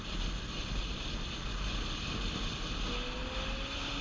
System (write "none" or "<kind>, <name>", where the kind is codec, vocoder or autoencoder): none